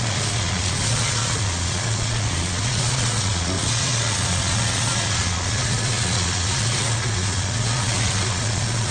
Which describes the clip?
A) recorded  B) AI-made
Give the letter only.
B